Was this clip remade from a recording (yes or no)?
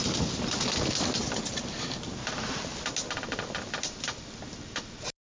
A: no